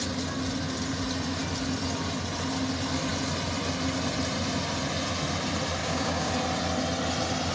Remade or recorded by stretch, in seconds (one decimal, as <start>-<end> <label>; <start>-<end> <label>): 0.0-5.8 recorded; 5.8-6.3 remade; 6.3-7.5 recorded